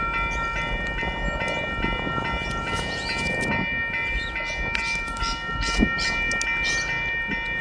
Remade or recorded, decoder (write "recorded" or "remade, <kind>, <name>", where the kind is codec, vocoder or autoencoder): recorded